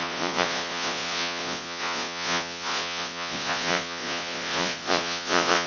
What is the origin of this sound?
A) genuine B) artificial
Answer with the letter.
B